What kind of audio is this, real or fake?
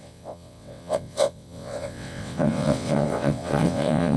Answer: fake